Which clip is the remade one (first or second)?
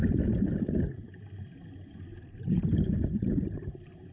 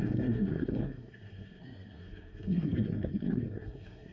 second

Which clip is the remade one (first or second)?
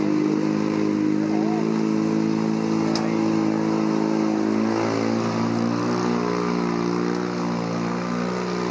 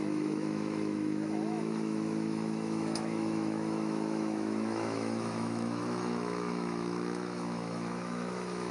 second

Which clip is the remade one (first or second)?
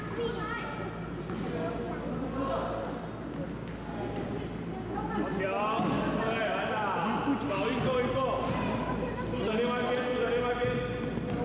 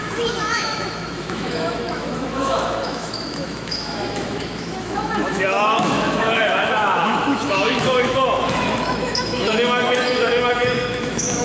second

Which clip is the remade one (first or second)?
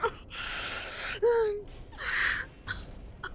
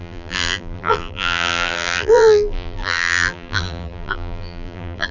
second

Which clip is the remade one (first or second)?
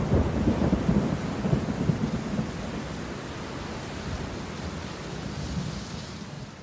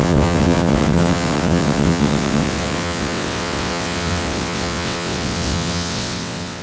second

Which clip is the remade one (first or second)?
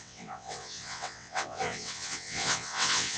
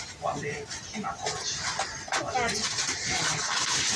first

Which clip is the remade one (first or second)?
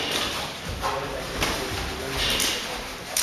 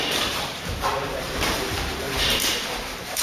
second